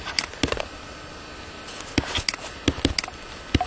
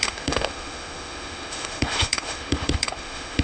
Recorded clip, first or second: first